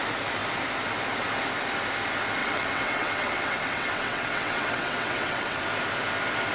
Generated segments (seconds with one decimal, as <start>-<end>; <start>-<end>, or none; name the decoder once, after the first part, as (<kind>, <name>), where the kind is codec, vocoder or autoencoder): 2.4-5.6 (vocoder, WaveNeXt)